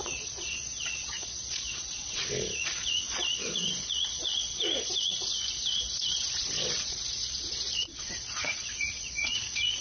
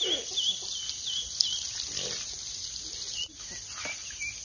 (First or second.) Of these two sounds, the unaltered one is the second